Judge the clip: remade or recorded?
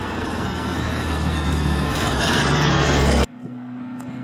remade